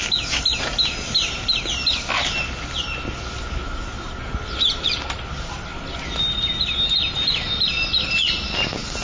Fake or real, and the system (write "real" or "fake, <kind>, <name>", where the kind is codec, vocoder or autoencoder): real